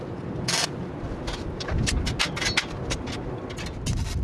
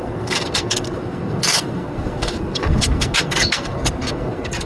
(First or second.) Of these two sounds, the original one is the first